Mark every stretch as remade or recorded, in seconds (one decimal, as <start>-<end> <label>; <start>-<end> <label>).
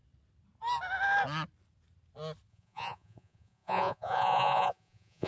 0.0-2.5 recorded; 2.5-5.3 remade